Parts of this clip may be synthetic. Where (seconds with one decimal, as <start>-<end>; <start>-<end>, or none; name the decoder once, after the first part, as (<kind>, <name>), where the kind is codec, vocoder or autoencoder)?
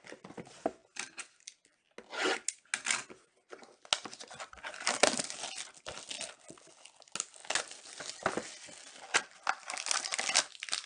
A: none